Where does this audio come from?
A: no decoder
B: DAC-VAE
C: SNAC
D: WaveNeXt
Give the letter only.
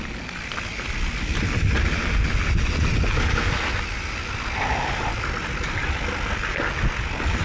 A